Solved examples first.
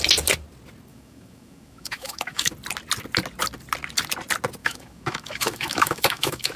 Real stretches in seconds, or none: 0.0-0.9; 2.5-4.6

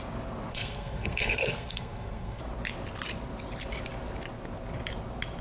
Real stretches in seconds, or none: 0.0-0.5; 2.4-5.4

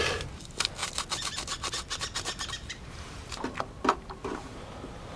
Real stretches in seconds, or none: 0.0-5.2

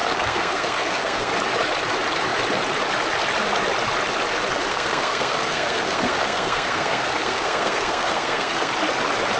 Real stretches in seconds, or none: 1.3-4.7; 8.7-9.4

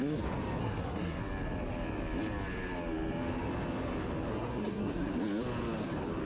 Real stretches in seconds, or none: 0.0-0.6; 1.2-4.3; 5.1-6.3

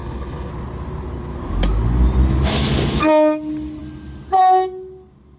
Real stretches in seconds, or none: 0.5-5.4

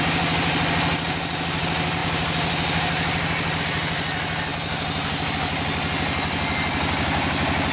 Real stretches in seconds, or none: 0.0-7.7